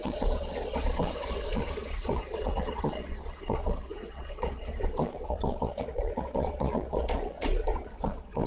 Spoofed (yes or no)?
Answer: yes